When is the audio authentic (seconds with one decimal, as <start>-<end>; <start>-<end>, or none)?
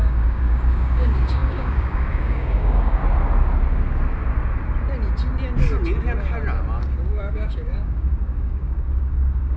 3.0-6.8